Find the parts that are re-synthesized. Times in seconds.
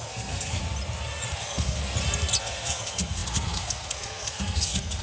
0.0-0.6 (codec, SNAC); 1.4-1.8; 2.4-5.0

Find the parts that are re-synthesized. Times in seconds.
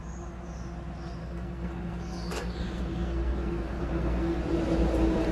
1.2-4.4 (codec, SNAC)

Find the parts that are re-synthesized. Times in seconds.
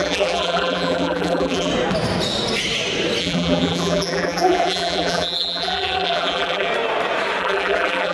0.0-1.7 (vocoder, BigVGAN v2); 3.2-6.7; 7.4-8.1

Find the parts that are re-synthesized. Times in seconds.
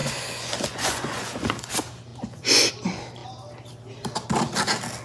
0.0-1.7 (vocoder, Vocos); 2.1-2.7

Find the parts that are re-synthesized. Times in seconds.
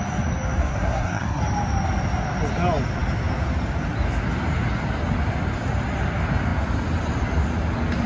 0.6-1.4 (codec, SNAC)